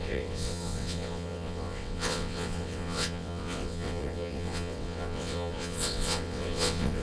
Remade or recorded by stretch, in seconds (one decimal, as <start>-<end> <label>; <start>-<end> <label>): 0.0-7.0 remade